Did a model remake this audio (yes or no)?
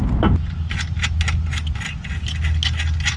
no